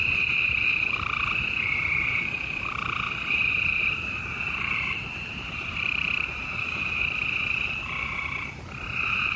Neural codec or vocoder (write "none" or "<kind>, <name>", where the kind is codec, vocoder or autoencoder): vocoder, BigVGAN v2